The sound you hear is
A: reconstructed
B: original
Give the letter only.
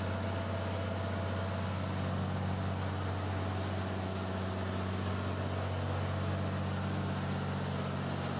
B